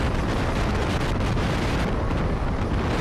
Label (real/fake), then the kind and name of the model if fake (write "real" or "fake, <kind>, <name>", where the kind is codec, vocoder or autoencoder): real